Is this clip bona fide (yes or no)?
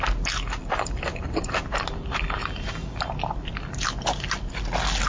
yes